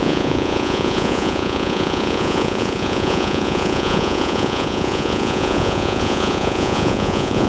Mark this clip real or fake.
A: fake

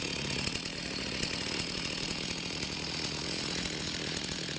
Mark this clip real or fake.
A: fake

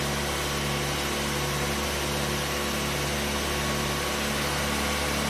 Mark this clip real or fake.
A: real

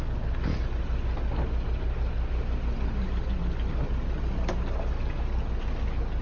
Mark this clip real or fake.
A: real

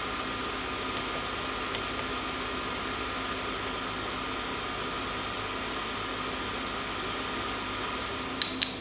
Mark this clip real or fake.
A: real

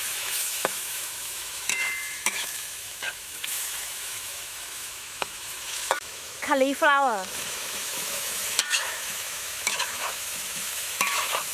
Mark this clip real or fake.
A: fake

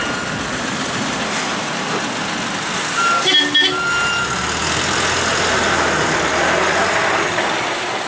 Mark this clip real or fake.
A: real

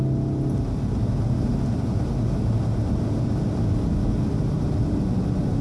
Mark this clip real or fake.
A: real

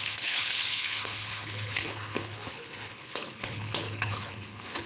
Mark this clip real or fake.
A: fake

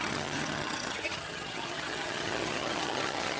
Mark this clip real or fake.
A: fake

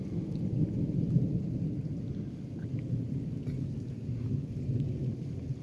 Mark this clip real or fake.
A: real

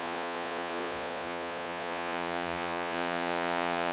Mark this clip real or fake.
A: fake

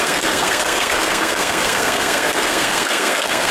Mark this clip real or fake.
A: fake